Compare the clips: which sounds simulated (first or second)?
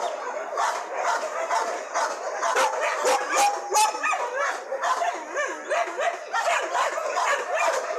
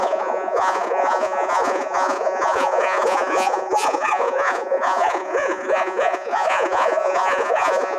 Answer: second